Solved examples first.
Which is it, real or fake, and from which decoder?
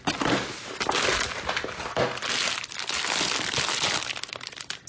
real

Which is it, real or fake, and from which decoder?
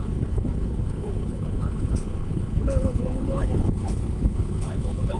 fake, codec, HILCodec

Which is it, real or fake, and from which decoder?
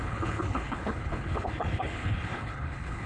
fake, codec, HILCodec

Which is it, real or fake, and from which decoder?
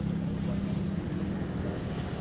real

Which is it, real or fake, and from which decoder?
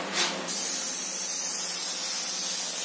real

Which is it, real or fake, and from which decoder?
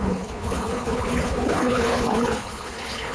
fake, codec, HILCodec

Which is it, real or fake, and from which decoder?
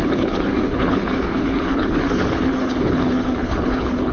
fake, codec, HILCodec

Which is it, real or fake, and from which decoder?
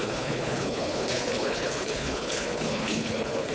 fake, codec, HILCodec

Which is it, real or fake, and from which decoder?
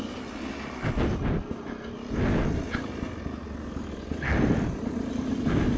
real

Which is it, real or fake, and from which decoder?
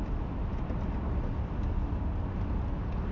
real